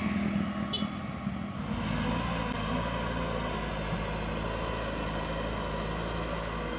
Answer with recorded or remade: recorded